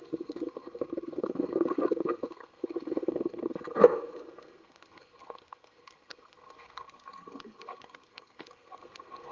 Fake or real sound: fake